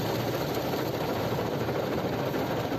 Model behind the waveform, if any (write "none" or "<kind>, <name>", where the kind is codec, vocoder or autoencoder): none